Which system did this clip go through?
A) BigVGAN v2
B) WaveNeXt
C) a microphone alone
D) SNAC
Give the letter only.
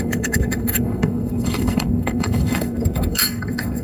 D